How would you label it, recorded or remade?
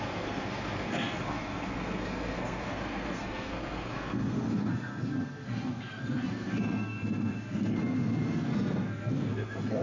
remade